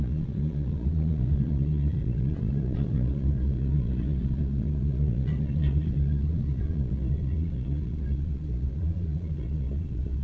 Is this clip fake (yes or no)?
yes